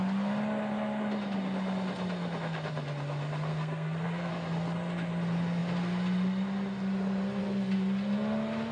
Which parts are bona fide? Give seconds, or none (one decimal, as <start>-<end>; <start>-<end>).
0.0-3.5; 4.3-8.7